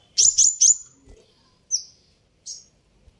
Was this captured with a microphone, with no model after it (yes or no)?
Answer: yes